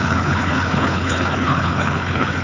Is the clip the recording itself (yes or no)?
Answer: no